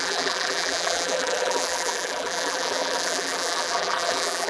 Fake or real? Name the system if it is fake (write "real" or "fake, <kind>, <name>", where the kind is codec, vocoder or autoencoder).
fake, vocoder, BigVGAN v2